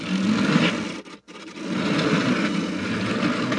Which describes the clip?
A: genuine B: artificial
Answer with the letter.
A